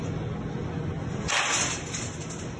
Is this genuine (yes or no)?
yes